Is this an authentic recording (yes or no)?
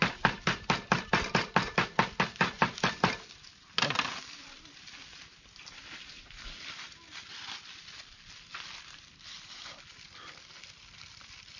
yes